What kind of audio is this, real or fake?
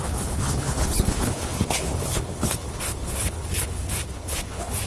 fake